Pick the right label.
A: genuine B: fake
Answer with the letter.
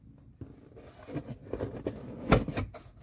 A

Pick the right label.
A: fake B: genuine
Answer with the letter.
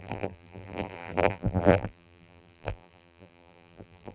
A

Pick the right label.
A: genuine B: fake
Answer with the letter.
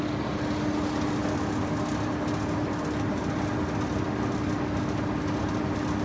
A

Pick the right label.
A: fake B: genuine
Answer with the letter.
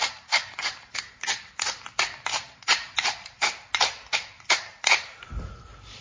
A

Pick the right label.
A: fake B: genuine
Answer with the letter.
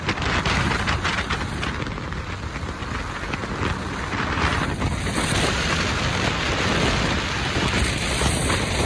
B